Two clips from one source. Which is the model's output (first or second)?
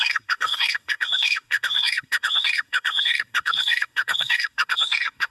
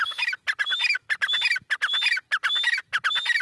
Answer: first